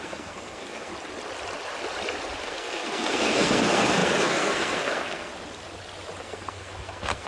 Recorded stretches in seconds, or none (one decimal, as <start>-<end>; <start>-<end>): 0.9-2.4; 5.3-6.2